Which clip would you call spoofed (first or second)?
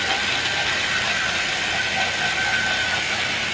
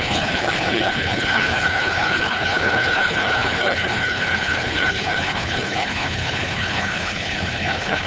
second